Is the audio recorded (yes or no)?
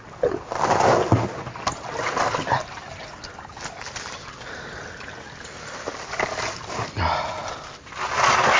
yes